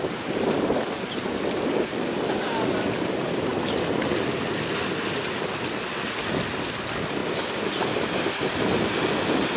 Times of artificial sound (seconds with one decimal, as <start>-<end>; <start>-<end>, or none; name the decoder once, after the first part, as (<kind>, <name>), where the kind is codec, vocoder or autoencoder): none